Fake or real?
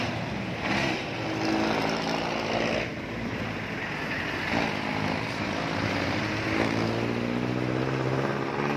real